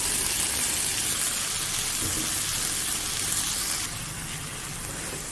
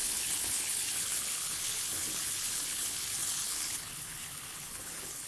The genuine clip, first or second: first